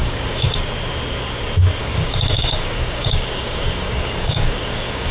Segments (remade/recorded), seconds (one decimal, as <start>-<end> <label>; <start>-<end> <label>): 0.0-0.6 remade; 0.6-1.8 recorded; 1.8-5.1 remade